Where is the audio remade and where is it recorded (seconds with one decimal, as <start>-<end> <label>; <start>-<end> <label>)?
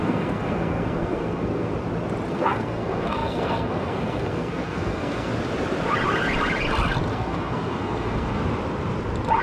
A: 0.0-1.7 remade; 1.7-2.3 recorded; 2.3-5.3 remade; 5.3-7.1 recorded; 7.1-8.4 remade; 8.4-9.4 recorded